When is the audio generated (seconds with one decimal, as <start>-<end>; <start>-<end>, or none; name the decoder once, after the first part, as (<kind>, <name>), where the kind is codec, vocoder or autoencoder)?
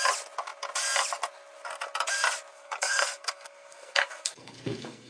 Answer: 2.5-5.1 (codec, SNAC)